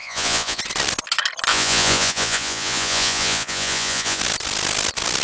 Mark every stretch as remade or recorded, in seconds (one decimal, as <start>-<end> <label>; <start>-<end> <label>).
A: 0.0-0.6 remade; 0.6-1.5 recorded; 1.5-4.2 remade; 4.2-5.2 recorded